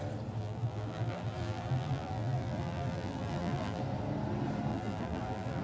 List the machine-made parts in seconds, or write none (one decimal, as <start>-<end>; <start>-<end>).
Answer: 0.4-3.8; 4.7-5.6